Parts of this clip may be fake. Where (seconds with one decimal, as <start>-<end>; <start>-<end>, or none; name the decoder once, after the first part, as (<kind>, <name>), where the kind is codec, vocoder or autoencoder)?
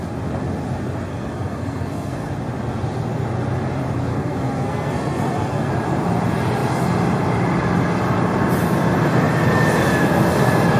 1.1-2.3 (codec, SNAC); 4.1-5.7